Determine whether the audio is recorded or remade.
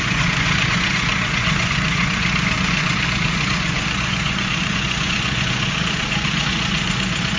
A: remade